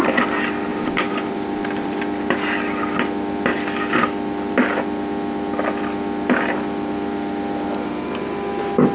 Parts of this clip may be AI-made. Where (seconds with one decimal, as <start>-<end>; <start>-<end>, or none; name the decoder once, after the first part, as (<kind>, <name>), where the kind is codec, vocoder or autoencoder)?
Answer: 0.7-2.0 (vocoder, BigVGAN v2)